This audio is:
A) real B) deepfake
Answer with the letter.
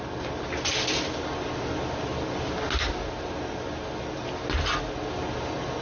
A